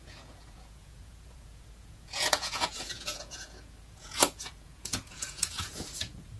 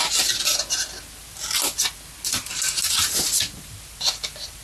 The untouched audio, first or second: second